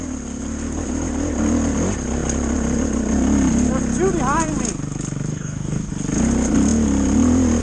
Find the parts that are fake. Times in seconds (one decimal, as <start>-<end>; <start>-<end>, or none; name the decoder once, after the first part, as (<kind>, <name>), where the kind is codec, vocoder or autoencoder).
5.3-5.9 (codec, DAC)

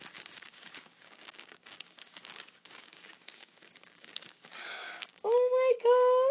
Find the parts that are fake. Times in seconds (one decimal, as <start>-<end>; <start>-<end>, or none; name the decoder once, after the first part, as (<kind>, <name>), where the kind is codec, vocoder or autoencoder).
0.0-6.3 (codec, DAC)